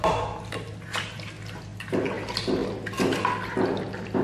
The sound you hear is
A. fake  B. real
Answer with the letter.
B